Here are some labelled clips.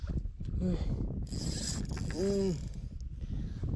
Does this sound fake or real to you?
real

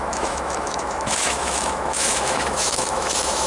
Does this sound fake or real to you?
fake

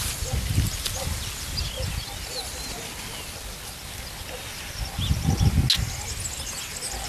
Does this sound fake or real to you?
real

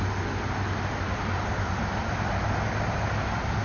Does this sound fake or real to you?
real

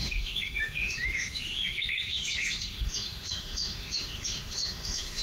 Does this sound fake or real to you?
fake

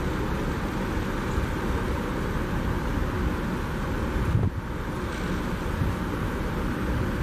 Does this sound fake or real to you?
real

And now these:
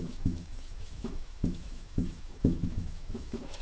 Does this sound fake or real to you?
fake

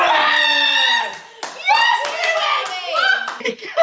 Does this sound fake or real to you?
real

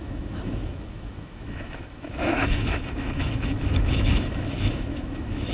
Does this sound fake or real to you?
fake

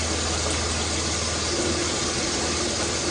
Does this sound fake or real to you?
real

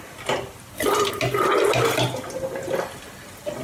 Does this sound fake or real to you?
real